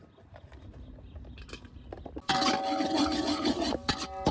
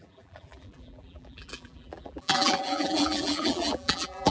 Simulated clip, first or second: second